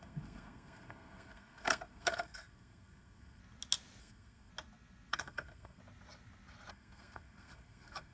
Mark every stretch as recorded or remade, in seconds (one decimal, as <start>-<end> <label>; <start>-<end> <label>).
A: 0.0-3.4 remade; 3.4-4.0 recorded; 4.0-4.5 remade; 4.5-5.1 recorded; 5.1-5.8 remade; 5.8-6.7 recorded; 6.7-8.1 remade

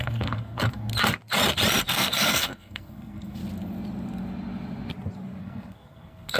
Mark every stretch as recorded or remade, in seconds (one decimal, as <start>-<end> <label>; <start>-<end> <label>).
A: 0.0-0.9 remade; 0.9-1.8 recorded; 1.8-3.4 remade; 3.4-5.4 recorded; 5.4-6.4 remade

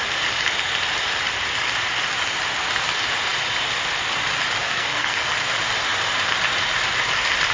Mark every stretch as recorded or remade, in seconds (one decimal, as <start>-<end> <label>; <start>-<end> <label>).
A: 0.0-4.6 recorded; 4.6-5.3 remade; 5.3-7.5 recorded

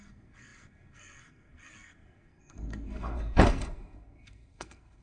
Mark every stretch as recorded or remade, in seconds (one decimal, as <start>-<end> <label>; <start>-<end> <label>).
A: 0.0-5.0 remade

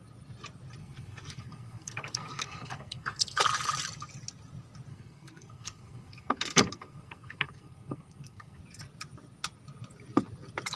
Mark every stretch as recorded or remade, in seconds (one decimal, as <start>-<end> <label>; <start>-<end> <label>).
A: 0.0-0.8 recorded; 0.8-3.4 remade; 3.4-4.9 recorded; 4.9-8.6 remade; 8.6-10.8 recorded